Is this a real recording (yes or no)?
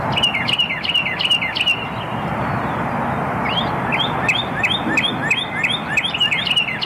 yes